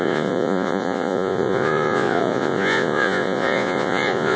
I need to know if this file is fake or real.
fake